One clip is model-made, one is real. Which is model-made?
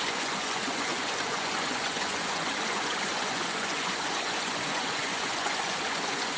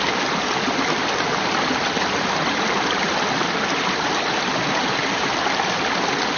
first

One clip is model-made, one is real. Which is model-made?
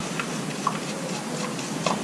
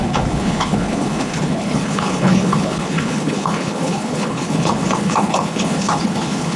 second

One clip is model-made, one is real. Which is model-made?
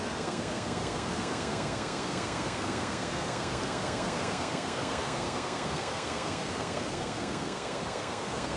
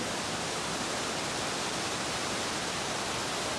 first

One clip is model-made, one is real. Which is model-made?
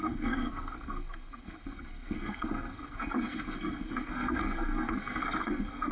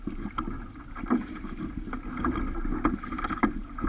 first